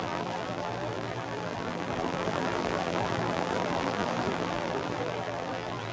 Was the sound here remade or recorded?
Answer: remade